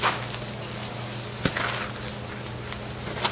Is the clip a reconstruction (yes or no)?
no